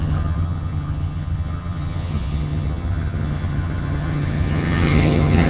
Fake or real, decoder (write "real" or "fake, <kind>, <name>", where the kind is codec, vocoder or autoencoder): fake, vocoder, HiFi-GAN